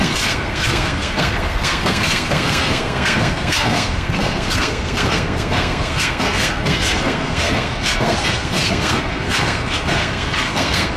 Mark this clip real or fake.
fake